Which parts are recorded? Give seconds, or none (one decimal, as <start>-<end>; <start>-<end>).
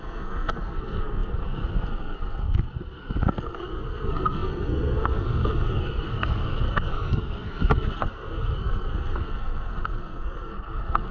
none